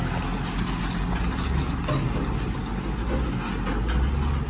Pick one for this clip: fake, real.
real